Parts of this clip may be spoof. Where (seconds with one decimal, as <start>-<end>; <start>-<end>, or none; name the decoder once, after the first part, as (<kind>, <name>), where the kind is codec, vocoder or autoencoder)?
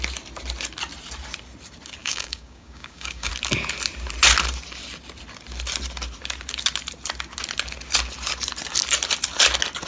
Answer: 2.0-3.3 (codec, DAC)